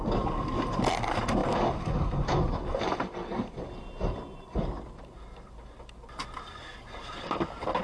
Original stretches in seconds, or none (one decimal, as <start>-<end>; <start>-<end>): 0.0-3.3; 5.0-7.8